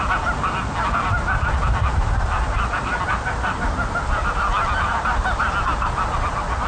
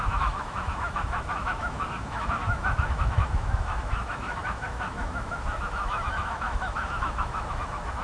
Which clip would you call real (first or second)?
first